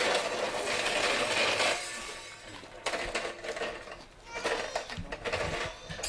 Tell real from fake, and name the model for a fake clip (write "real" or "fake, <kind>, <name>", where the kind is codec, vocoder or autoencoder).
real